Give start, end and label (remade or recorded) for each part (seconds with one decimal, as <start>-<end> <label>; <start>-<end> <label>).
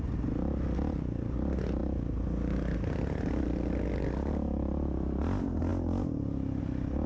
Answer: 0.0-7.1 recorded